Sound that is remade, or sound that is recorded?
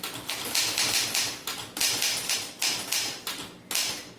recorded